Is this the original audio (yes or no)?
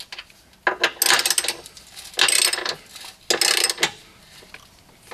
yes